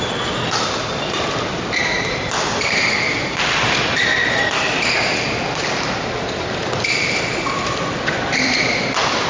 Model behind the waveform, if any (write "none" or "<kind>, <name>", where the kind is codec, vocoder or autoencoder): vocoder, BigVGAN v2